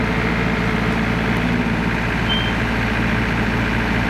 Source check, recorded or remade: recorded